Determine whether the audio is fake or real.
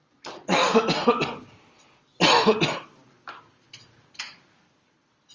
real